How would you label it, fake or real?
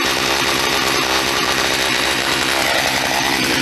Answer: fake